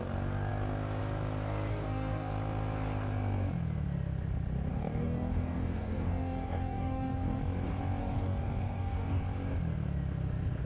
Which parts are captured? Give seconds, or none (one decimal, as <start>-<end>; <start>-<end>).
0.0-1.7; 2.3-4.7; 7.4-8.0; 9.2-10.7